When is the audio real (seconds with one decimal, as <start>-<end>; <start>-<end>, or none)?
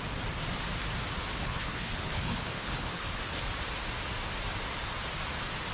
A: 0.0-1.4; 3.2-5.7